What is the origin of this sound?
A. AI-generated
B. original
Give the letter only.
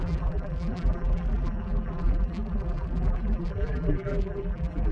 A